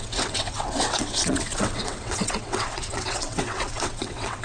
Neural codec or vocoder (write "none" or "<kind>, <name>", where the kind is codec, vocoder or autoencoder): vocoder, WaveNeXt